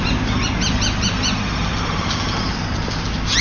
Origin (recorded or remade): recorded